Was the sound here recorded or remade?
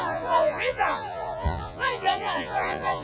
remade